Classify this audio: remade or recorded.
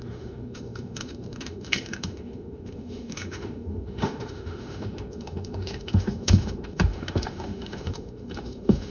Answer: remade